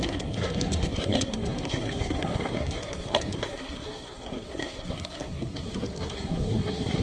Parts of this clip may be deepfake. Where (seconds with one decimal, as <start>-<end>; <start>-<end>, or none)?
0.0-7.0